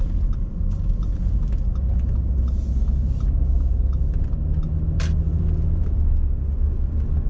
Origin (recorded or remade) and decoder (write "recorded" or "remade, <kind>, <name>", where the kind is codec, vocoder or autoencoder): recorded